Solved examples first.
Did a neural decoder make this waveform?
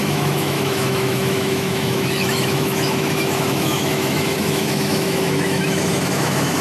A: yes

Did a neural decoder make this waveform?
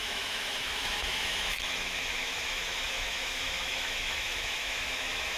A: yes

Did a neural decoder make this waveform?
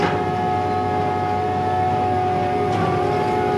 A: no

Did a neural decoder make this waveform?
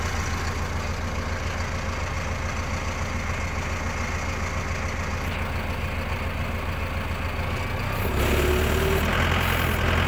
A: no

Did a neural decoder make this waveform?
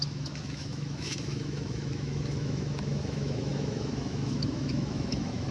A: yes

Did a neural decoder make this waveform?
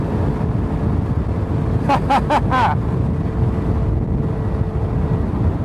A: no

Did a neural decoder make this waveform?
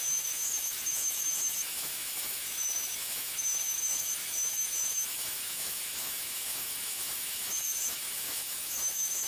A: yes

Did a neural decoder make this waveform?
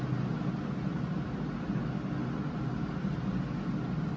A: no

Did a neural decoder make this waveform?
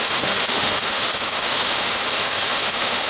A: yes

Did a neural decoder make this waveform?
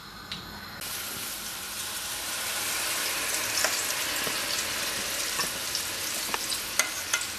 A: no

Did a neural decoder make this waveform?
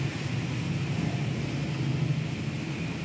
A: no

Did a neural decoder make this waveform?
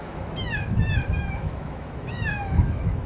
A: yes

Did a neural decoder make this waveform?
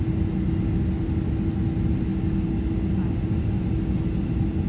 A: no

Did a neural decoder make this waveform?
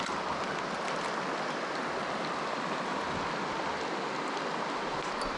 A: no